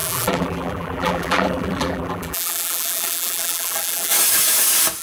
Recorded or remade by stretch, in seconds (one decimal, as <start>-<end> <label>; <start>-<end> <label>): 0.0-4.1 remade; 4.1-5.0 recorded